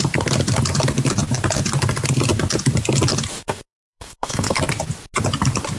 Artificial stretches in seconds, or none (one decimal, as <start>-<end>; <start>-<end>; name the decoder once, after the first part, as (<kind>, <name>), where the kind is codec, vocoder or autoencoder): 3.4-4.6 (codec, SNAC)